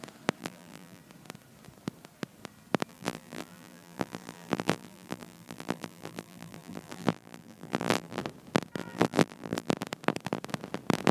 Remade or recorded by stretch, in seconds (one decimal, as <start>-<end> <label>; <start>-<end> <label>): 0.0-0.4 recorded; 0.4-1.0 remade; 1.0-2.9 recorded; 2.9-8.2 remade; 8.2-8.8 recorded; 8.8-9.7 remade; 9.7-11.1 recorded